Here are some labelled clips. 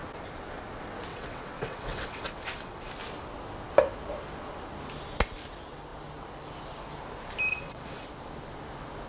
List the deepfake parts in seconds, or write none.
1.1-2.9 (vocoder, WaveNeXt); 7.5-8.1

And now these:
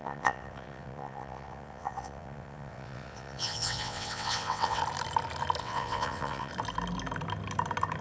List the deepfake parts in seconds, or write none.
0.0-4.8 (vocoder, WaveNeXt); 5.6-6.5

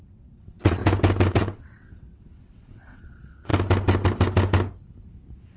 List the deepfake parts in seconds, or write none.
0.0-0.8 (vocoder, WaveNeXt); 1.3-3.5